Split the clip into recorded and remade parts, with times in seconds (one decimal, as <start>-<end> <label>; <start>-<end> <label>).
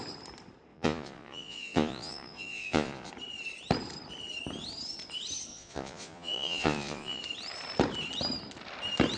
0.0-0.7 recorded; 0.7-3.1 remade; 3.1-5.5 recorded; 5.5-7.2 remade; 7.2-9.2 recorded